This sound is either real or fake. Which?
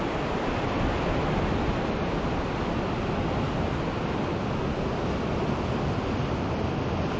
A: real